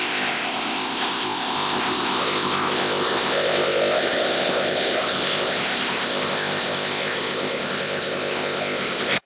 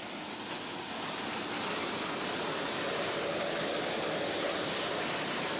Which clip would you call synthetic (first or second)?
first